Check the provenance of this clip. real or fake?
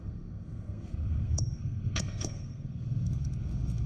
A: fake